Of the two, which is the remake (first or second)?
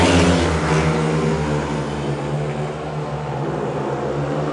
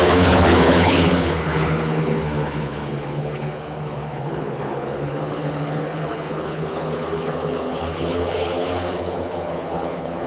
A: second